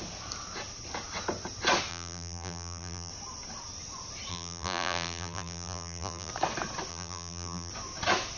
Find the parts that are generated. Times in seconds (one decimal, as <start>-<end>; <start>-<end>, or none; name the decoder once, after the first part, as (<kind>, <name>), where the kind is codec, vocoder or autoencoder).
1.9-3.1 (vocoder, BigVGAN v2); 4.3-6.3; 6.9-7.7